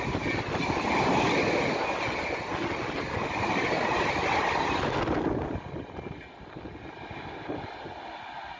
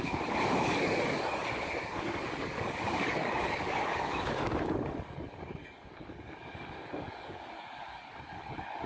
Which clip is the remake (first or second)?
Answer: second